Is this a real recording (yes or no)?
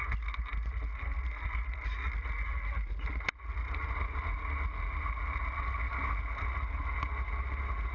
yes